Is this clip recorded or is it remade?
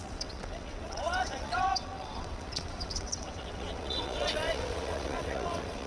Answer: remade